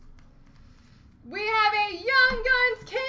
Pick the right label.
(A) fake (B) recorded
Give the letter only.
B